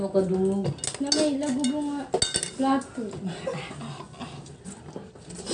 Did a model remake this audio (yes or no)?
no